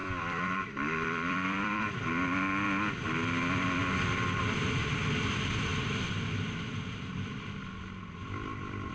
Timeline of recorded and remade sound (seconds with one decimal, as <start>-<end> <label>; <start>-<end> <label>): 0.0-1.8 remade; 1.8-3.8 recorded; 3.8-4.4 remade; 4.4-8.9 recorded